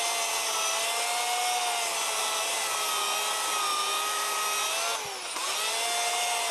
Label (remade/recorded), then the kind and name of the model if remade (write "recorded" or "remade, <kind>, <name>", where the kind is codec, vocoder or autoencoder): recorded